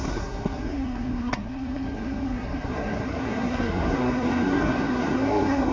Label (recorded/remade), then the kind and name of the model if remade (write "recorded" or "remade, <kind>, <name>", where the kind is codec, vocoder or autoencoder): remade, codec, SNAC